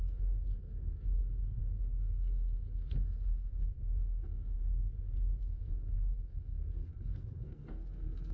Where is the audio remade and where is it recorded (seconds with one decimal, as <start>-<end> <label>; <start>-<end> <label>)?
0.0-4.6 remade; 4.6-5.4 recorded; 5.4-8.3 remade